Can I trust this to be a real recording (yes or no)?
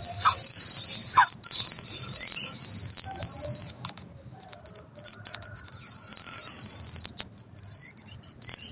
yes